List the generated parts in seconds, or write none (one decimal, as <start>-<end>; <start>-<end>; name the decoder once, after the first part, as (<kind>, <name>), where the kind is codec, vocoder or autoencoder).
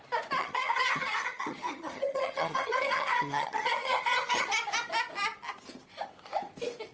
0.4-4.5 (vocoder, HiFi-GAN)